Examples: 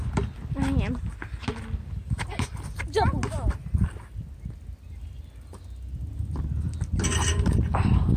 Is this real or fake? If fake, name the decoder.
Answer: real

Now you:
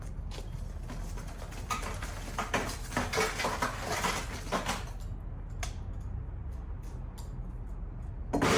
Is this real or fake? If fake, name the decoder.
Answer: real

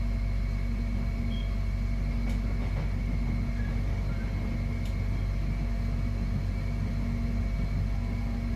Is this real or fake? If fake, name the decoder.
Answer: real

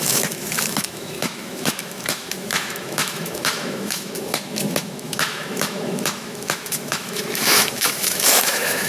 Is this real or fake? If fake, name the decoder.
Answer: fake, autoencoder, DAC-VAE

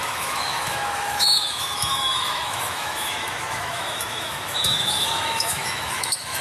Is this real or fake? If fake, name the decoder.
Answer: fake, autoencoder, DAC-VAE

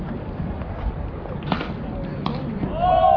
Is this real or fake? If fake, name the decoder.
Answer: real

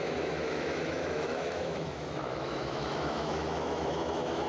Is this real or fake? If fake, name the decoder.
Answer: fake, autoencoder, DAC-VAE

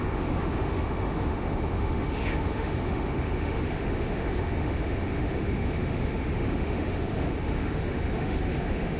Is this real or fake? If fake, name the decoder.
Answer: fake, autoencoder, DAC-VAE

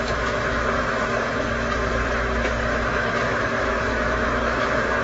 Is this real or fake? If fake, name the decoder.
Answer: fake, autoencoder, DAC-VAE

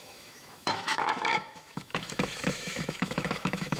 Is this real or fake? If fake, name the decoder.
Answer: fake, autoencoder, DAC-VAE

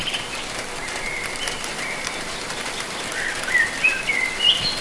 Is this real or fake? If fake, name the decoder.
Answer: real